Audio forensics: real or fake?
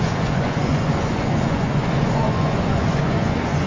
fake